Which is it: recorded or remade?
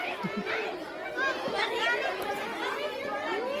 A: recorded